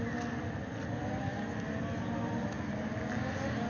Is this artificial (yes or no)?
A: no